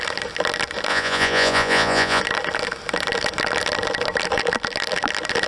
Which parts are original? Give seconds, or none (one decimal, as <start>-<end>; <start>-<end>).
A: 0.0-0.9; 2.2-5.5